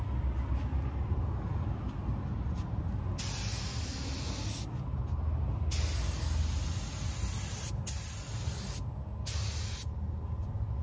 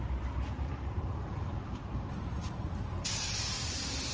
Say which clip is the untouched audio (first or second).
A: first